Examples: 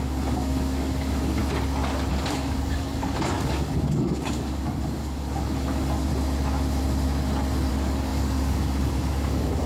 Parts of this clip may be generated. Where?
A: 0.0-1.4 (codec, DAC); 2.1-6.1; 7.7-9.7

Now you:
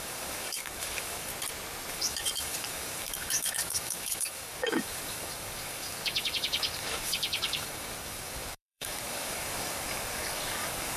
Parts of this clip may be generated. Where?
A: 0.0-1.3 (codec, DAC); 1.9-11.0

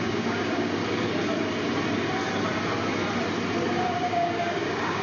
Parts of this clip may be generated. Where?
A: 0.0-0.8 (codec, DAC); 3.7-5.0

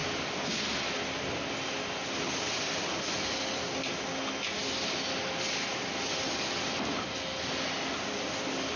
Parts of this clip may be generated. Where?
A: none

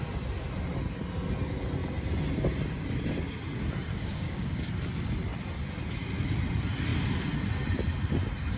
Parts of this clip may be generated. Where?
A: 3.9-4.7 (codec, DAC)

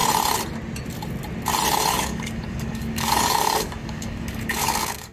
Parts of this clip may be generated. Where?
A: 1.9-5.1 (codec, DAC)

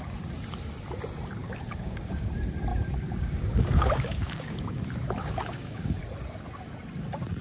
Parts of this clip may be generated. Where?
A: 1.4-2.3 (codec, DAC); 2.7-4.8; 5.2-6.0